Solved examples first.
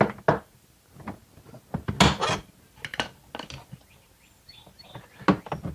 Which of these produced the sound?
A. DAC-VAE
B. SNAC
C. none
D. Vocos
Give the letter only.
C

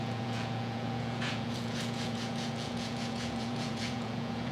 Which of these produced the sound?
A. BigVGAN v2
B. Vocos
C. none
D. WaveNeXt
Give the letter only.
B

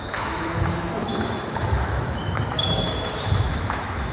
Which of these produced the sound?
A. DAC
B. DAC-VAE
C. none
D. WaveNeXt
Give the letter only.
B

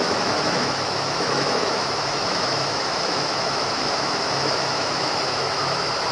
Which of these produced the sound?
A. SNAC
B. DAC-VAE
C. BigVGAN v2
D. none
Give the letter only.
B